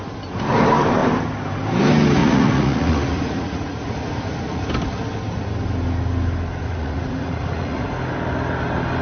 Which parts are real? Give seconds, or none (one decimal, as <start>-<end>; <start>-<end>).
0.0-2.2; 4.7-6.6; 7.9-9.0